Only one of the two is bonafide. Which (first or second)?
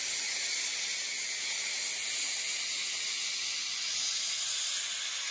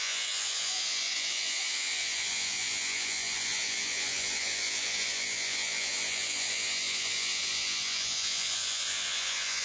first